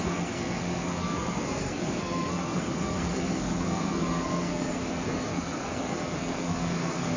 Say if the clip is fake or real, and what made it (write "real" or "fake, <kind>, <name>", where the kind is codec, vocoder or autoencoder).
fake, codec, SNAC